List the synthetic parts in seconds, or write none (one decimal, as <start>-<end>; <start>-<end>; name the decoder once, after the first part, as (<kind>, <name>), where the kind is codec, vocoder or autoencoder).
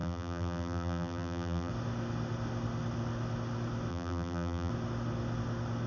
0.0-1.7 (vocoder, BigVGAN v2); 3.9-4.7